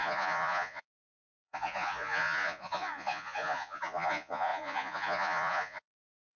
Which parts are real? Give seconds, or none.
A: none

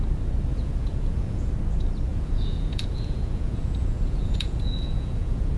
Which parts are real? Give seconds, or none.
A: 0.0-0.5; 1.5-2.1

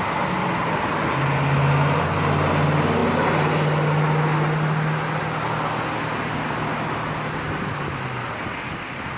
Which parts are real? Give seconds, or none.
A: 0.0-9.2